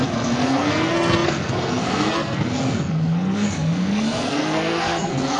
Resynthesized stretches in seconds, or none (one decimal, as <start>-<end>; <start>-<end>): 0.0-5.4